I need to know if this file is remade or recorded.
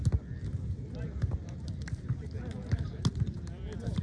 recorded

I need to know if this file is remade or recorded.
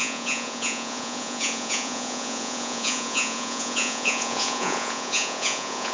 remade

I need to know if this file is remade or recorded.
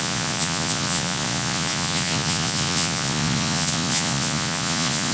remade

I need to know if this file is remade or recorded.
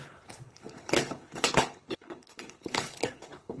remade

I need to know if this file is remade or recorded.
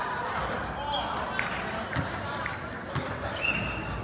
recorded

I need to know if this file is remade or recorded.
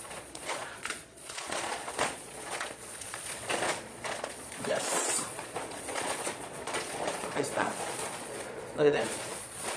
remade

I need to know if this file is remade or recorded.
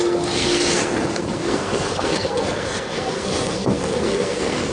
remade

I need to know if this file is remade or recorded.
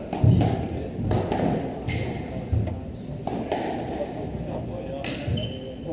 recorded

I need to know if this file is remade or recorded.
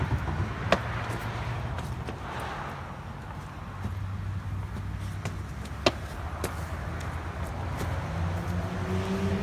recorded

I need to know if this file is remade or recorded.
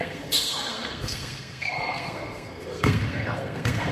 remade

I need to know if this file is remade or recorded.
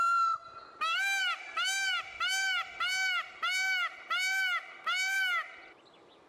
recorded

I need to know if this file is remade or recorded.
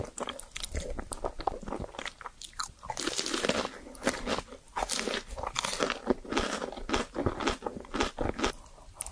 recorded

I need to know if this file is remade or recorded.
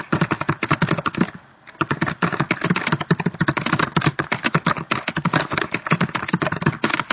recorded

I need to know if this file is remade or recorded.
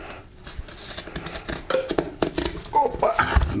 recorded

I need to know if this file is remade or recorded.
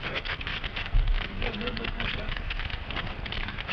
remade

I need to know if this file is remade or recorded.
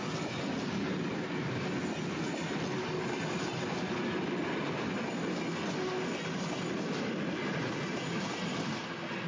recorded